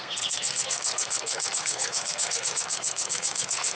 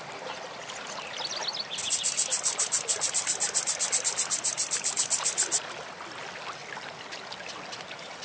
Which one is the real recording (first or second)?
second